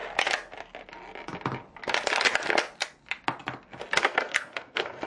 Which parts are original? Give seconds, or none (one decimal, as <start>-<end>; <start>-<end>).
0.0-4.0